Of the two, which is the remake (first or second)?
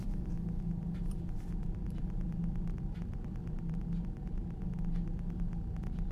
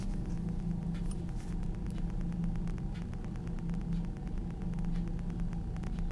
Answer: first